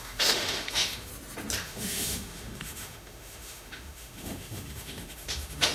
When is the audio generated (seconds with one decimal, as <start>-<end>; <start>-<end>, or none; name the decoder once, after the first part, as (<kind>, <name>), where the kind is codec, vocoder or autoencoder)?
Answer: 0.0-1.1 (autoencoder, DAC-VAE); 1.6-5.7